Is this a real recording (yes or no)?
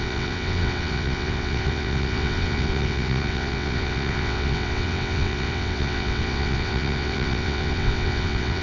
no